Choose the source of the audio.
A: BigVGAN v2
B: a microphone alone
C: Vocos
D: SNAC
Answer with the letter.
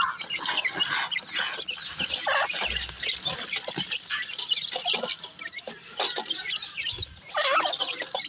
B